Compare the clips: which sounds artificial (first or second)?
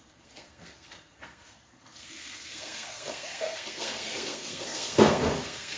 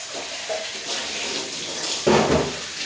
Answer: first